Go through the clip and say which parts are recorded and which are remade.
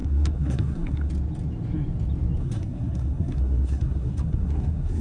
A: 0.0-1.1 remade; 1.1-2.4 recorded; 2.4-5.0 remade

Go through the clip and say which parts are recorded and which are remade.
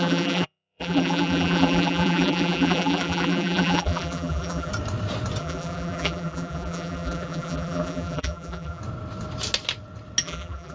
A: 0.0-4.7 remade; 4.7-5.4 recorded; 5.4-8.8 remade; 8.8-10.2 recorded; 10.2-10.7 remade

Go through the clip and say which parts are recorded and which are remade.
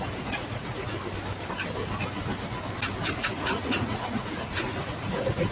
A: 0.0-0.9 remade; 0.9-3.1 recorded; 3.1-5.5 remade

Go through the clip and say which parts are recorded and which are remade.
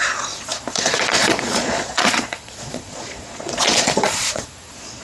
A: 0.0-5.0 remade